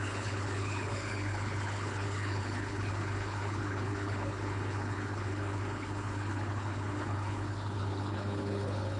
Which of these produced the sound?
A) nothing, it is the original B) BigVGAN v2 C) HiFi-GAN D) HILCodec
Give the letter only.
D